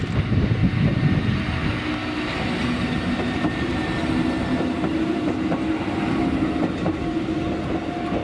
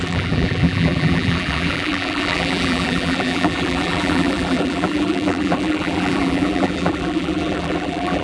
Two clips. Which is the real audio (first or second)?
first